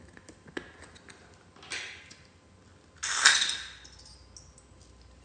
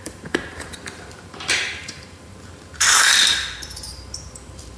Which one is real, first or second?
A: first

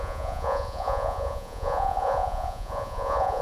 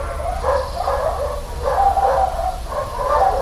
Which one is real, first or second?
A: second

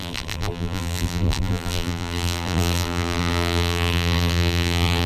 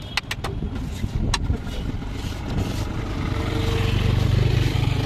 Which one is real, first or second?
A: second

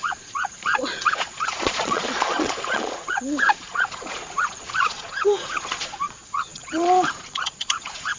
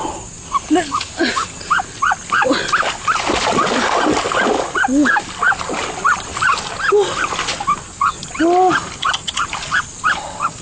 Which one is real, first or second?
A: second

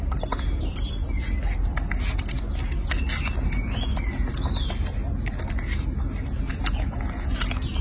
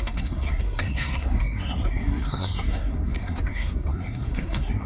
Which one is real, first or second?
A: first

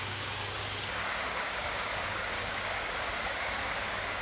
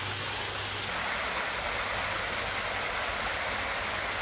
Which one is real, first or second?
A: second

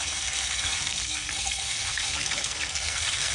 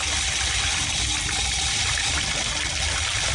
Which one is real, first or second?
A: second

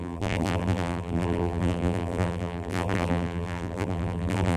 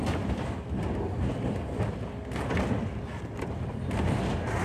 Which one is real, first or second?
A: second